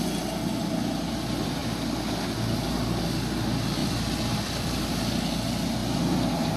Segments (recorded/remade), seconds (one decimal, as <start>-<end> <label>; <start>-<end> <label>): 0.0-3.8 recorded; 3.8-5.0 remade; 5.0-5.8 recorded; 5.8-6.6 remade